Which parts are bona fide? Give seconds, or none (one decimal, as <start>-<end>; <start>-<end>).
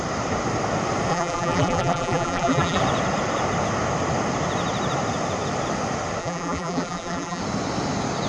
0.0-1.1; 2.8-6.2; 7.4-8.3